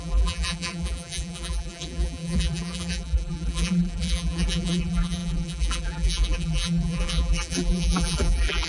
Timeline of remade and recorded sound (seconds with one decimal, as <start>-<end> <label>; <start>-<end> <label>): 0.0-8.7 remade